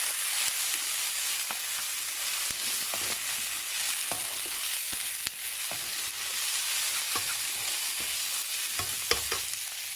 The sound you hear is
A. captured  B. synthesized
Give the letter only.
A